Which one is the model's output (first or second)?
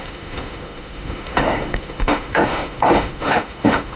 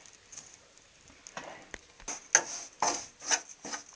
first